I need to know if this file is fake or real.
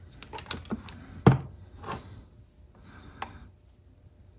real